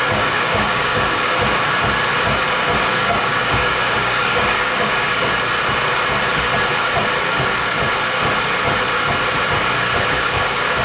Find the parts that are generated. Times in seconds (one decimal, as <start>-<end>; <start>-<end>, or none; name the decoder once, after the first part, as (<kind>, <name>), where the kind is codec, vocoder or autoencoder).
0.0-1.3 (codec, DAC); 2.9-5.3; 10.1-10.8